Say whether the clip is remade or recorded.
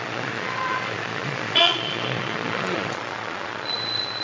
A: remade